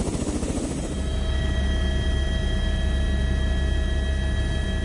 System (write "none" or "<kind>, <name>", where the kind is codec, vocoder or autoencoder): none